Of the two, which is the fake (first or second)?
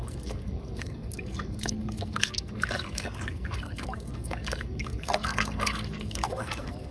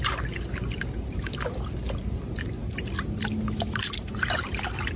first